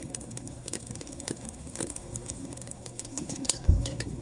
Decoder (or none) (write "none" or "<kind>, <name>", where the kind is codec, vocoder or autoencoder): codec, SNAC